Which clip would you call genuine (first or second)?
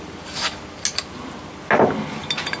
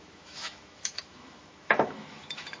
first